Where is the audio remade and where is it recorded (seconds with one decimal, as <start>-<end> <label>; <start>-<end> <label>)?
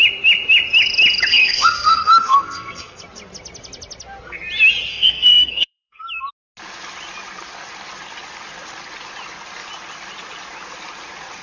0.0-1.3 recorded; 1.3-3.0 remade; 3.0-4.9 recorded; 4.9-6.0 remade; 6.0-11.4 recorded